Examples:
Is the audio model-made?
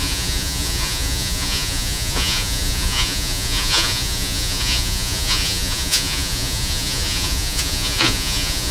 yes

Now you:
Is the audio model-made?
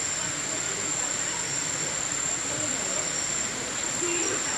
no